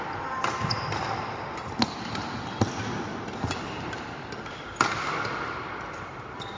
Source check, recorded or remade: recorded